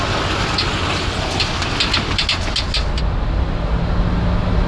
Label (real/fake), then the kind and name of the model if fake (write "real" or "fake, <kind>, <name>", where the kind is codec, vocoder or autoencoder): real